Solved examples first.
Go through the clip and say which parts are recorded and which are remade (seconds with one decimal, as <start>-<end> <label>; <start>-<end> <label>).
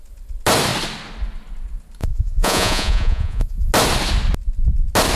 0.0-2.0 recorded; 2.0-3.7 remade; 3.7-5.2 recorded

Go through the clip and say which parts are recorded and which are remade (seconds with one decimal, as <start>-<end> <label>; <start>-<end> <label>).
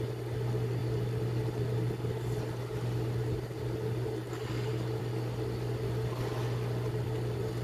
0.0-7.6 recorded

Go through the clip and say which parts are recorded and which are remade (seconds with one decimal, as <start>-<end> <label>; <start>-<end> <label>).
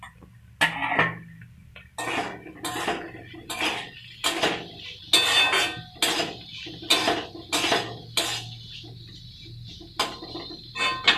0.0-11.2 recorded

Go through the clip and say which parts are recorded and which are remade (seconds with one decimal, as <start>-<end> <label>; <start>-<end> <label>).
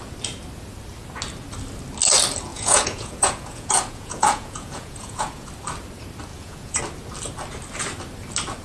0.0-2.5 recorded; 2.5-5.5 remade; 5.5-6.3 recorded; 6.3-6.8 remade; 6.8-8.6 recorded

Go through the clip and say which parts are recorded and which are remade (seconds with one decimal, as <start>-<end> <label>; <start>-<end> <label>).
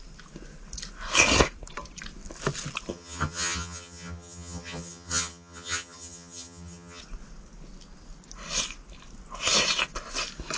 0.0-2.9 recorded; 2.9-7.0 remade; 7.0-10.6 recorded